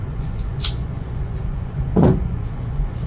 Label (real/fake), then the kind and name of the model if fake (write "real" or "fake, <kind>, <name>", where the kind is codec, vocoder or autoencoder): fake, vocoder, Vocos